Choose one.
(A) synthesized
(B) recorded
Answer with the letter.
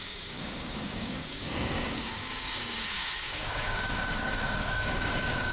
A